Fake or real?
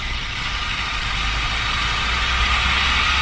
real